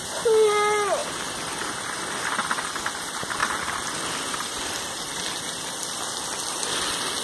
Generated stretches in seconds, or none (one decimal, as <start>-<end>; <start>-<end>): none